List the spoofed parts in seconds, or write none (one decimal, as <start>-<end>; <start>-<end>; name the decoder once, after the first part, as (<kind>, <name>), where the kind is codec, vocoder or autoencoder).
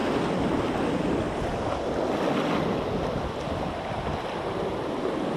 none